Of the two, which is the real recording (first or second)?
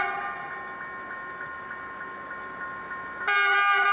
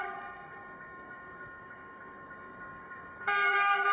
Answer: first